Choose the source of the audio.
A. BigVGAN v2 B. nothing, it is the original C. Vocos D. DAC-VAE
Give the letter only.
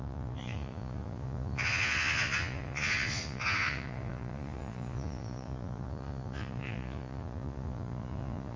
C